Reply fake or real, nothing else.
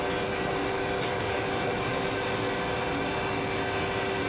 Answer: real